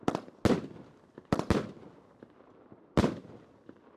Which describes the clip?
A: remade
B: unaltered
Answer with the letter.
B